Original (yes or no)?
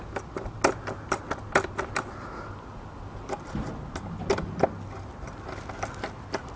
yes